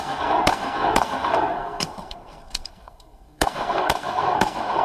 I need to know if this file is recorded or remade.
remade